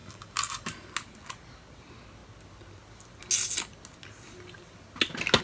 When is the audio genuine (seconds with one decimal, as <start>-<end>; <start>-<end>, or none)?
0.9-5.4